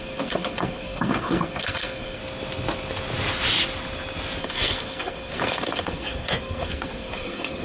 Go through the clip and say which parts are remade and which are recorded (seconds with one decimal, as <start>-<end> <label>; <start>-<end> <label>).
0.0-2.2 remade; 2.2-4.4 recorded; 4.4-7.6 remade